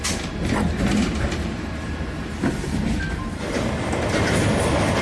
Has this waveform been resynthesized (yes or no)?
no